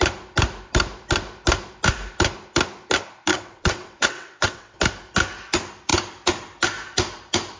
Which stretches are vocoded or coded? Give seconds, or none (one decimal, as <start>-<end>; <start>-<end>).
3.3-4.8